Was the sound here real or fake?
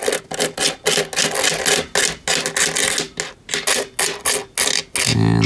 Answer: real